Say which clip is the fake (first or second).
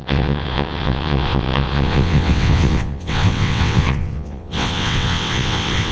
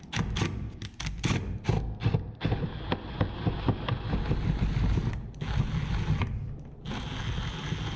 first